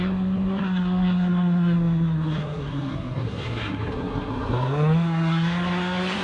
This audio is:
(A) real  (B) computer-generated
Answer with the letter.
B